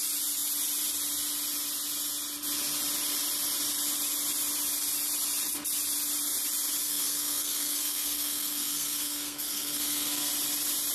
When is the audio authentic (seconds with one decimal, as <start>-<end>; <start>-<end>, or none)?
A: 0.0-6.8; 10.3-10.9